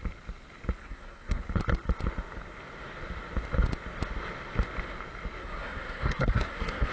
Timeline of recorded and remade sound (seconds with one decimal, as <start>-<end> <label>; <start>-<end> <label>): 0.0-0.8 recorded; 0.8-1.4 remade; 1.4-5.4 recorded; 5.4-6.9 remade